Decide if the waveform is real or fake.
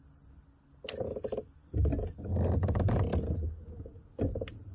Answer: real